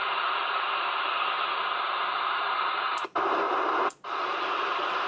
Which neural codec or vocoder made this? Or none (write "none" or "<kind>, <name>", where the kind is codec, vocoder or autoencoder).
vocoder, BigVGAN v2